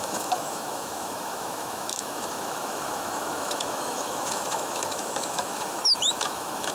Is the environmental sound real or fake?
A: fake